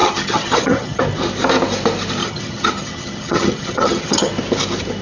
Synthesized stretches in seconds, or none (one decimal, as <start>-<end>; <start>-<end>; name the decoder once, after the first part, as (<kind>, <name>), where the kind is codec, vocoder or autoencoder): 0.0-1.0 (vocoder, HiFi-GAN); 2.2-4.3

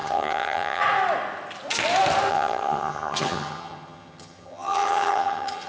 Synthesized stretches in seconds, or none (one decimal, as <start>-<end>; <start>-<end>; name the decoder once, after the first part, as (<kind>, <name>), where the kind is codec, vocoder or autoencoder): 0.0-0.8 (vocoder, HiFi-GAN); 2.3-5.7

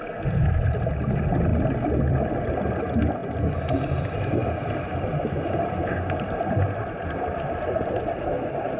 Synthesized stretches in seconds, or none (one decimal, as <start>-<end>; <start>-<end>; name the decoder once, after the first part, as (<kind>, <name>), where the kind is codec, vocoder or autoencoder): none

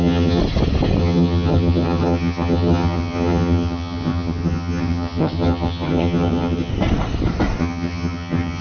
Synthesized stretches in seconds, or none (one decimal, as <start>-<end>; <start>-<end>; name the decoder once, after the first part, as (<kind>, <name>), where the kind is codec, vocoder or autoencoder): 0.0-0.4 (vocoder, HiFi-GAN); 1.0-6.7; 7.6-8.6

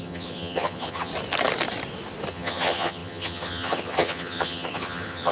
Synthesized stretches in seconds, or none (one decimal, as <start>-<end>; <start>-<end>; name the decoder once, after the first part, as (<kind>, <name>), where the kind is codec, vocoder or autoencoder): 0.0-1.1 (vocoder, HiFi-GAN); 2.3-5.3

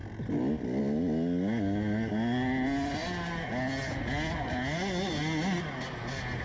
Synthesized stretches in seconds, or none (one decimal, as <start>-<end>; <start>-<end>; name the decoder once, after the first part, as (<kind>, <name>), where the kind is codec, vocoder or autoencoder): none